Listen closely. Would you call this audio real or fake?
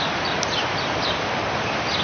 real